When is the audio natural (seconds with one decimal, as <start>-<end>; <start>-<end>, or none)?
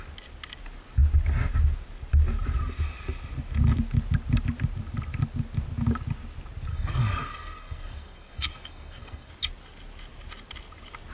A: 0.0-6.7; 9.3-11.1